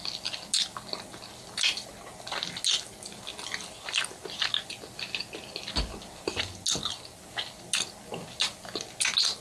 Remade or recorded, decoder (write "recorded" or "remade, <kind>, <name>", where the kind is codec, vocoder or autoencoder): recorded